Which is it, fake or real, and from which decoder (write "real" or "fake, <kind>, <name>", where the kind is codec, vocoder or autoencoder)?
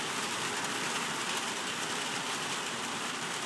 real